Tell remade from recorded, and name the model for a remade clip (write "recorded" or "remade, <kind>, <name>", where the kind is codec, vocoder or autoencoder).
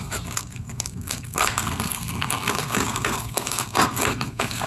remade, codec, SNAC